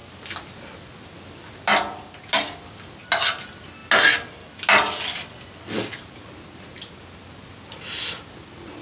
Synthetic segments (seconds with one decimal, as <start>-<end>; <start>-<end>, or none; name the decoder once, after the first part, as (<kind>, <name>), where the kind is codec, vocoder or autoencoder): none